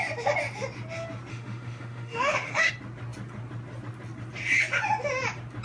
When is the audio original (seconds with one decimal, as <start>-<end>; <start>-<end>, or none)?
0.0-1.3; 2.7-5.6